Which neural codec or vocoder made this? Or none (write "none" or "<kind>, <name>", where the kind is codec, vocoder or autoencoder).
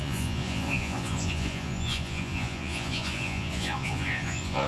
vocoder, Vocos